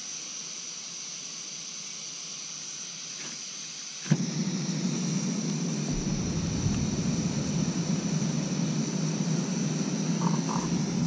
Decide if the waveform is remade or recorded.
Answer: recorded